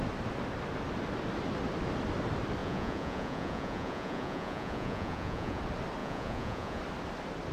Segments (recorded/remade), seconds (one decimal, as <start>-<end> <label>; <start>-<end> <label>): 0.0-2.6 recorded; 2.6-5.6 remade; 5.6-6.0 recorded; 6.0-6.8 remade; 6.8-7.5 recorded